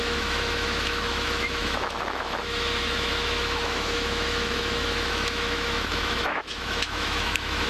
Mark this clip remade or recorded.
remade